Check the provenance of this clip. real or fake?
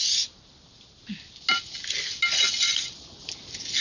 real